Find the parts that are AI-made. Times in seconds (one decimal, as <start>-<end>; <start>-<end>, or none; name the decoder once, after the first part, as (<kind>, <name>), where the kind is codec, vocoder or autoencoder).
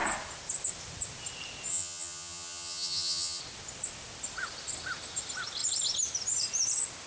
1.7-3.4 (vocoder, HiFi-GAN)